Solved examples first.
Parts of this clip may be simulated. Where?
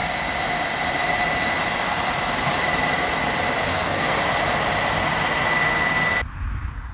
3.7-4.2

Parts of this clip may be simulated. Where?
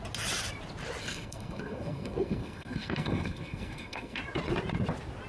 1.0-4.2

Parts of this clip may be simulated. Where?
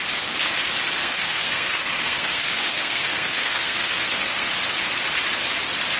1.0-4.5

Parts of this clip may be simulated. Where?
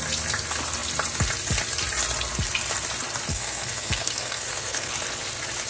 3.3-4.9